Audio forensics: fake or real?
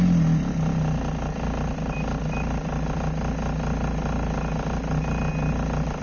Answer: real